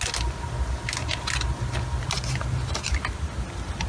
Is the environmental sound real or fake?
real